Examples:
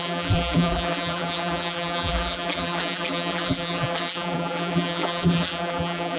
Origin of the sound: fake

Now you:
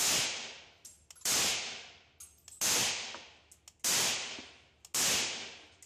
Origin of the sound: real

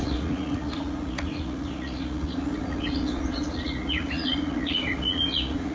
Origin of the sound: fake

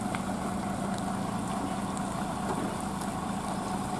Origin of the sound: real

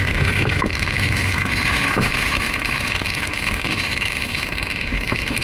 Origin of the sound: fake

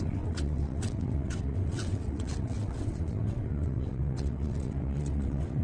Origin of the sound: fake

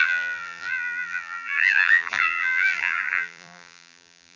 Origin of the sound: fake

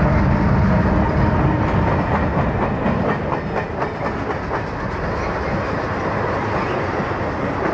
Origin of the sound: real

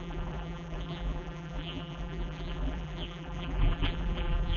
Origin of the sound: fake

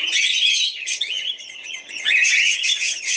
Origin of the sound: fake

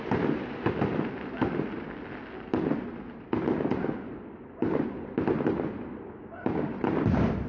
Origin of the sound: real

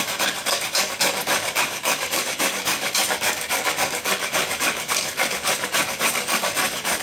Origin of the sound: fake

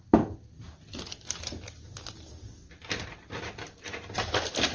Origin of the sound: real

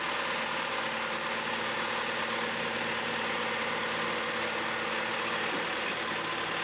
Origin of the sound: real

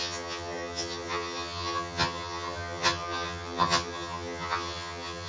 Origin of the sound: fake